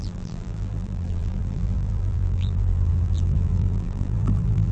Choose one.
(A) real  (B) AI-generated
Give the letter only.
B